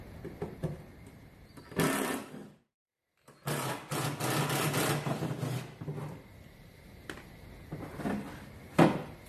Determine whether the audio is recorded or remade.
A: recorded